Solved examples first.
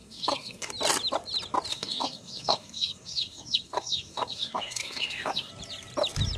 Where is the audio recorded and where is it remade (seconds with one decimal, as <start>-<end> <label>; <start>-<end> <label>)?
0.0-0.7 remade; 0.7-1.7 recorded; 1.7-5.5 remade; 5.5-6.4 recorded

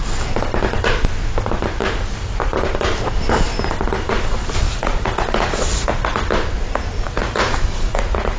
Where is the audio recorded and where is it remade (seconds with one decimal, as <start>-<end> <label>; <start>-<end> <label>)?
0.0-4.6 recorded; 4.6-6.1 remade; 6.1-6.9 recorded; 6.9-8.4 remade

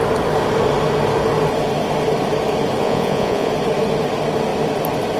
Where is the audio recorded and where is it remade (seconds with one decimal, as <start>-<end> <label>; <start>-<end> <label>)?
0.0-2.8 recorded; 2.8-3.5 remade; 3.5-5.2 recorded